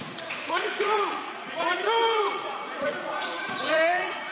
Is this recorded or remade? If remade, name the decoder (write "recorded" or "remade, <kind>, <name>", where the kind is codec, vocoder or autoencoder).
remade, vocoder, Vocos